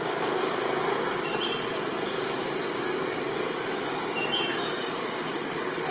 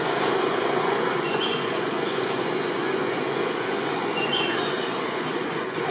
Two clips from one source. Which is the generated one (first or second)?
second